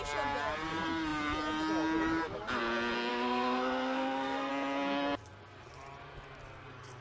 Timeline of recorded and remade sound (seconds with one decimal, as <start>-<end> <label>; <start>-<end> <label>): 0.0-3.1 recorded; 3.1-4.5 remade; 4.5-7.0 recorded